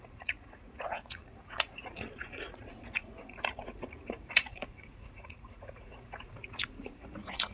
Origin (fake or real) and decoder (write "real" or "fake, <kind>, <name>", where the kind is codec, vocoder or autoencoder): fake, vocoder, Vocos